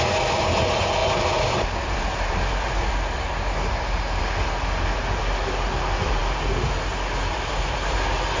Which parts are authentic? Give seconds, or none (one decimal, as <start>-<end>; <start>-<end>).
0.0-1.0; 4.2-8.4